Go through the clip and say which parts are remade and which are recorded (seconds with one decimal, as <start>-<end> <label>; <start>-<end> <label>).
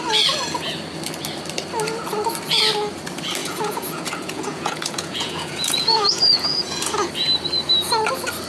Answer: 0.0-3.4 recorded; 3.4-7.1 remade; 7.1-8.5 recorded